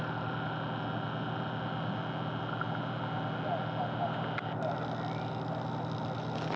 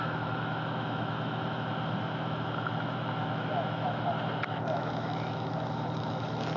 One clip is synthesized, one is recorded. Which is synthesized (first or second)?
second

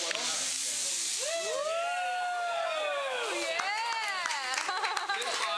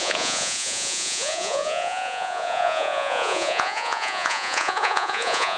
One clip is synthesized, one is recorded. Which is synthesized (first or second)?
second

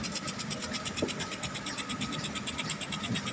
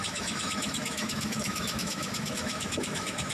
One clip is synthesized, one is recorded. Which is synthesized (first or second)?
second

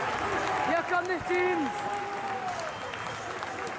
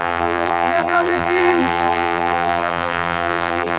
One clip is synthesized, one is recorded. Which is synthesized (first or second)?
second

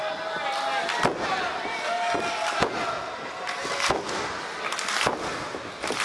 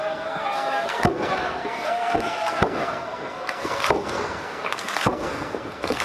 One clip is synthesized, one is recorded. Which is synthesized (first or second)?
second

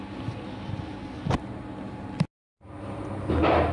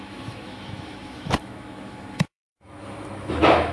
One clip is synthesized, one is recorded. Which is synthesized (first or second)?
second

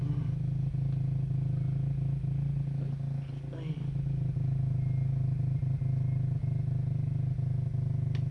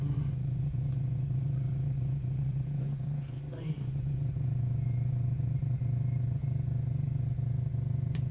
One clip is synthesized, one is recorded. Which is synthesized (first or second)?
second